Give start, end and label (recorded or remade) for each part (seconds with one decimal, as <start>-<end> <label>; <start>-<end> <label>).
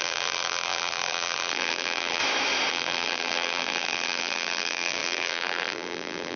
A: 0.0-2.2 remade; 2.2-2.7 recorded; 2.7-6.4 remade